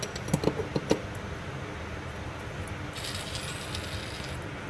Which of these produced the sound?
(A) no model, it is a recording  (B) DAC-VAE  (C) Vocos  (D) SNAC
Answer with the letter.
A